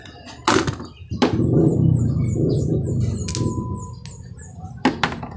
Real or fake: real